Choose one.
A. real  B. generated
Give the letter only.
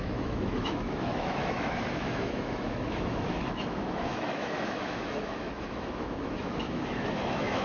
B